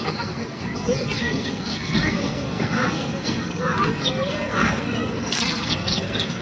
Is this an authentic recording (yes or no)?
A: no